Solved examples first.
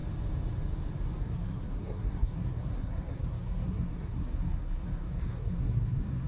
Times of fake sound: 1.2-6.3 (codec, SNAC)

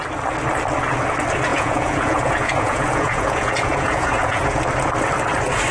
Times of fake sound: 1.5-4.6 (vocoder, Vocos)

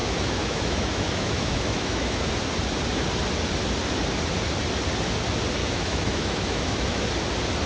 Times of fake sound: 0.0-2.3 (autoencoder, DAC-VAE); 5.6-7.1

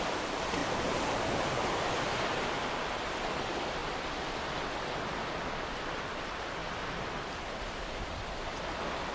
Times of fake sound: 0.0-3.8 (vocoder, BigVGAN v2); 5.3-9.1

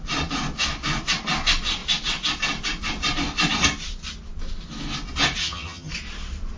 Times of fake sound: 5.4-5.9 (vocoder, HiFi-GAN)

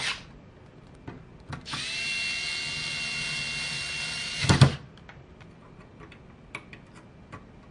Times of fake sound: none

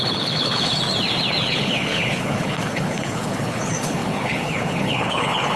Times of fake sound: 0.0-0.8 (codec, HILCodec); 1.4-5.6